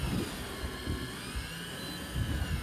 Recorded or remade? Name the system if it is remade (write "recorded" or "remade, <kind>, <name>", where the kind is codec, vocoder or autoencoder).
recorded